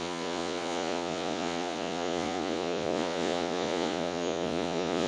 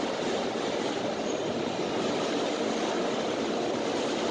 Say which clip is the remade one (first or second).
first